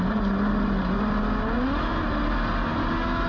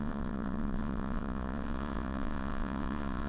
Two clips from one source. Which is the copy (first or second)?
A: second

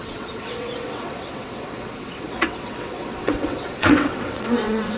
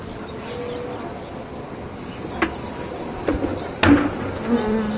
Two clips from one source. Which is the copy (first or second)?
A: first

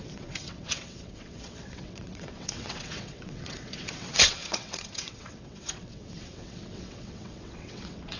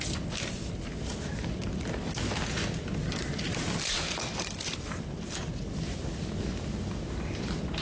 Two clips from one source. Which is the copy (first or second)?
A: first